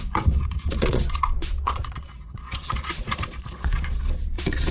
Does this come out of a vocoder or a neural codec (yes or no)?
yes